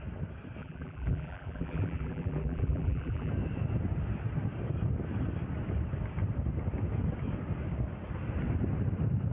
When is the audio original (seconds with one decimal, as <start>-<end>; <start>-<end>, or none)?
0.0-0.6; 3.3-9.3